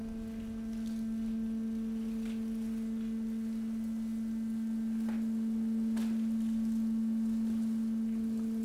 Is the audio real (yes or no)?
yes